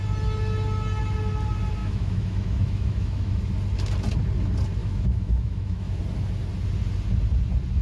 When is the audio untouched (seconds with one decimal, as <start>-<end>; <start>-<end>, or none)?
0.0-1.8; 3.4-4.8; 6.0-7.8